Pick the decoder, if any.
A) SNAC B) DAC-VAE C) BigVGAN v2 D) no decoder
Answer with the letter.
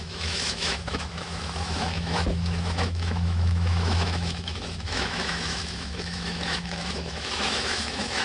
B